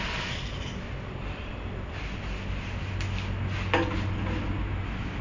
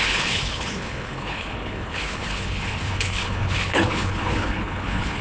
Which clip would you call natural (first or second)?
first